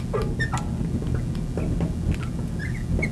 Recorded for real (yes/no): yes